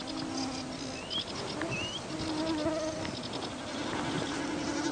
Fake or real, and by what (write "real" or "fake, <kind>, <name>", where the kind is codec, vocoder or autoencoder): real